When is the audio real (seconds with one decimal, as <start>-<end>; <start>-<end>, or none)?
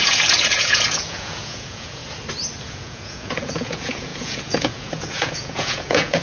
2.0-2.6